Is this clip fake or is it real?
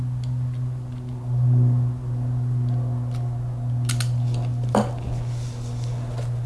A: real